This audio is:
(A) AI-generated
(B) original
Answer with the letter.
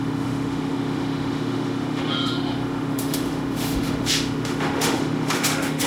A